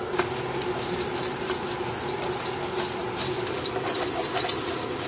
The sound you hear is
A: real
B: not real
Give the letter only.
A